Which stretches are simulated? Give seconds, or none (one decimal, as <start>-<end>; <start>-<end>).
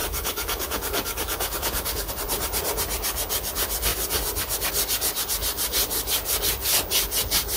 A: 0.0-2.1